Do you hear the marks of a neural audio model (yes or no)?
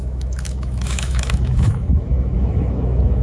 yes